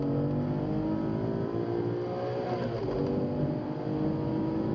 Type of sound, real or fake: real